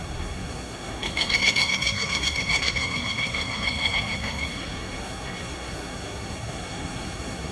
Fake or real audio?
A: fake